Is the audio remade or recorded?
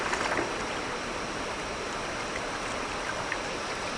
recorded